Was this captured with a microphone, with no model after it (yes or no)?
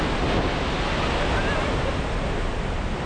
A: yes